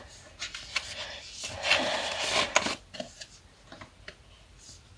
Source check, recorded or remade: recorded